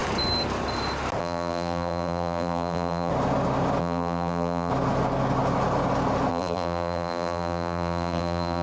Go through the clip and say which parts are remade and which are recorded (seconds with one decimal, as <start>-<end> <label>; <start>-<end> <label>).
0.0-1.2 recorded; 1.2-3.1 remade; 3.1-3.8 recorded; 3.8-4.7 remade; 4.7-6.3 recorded; 6.3-8.6 remade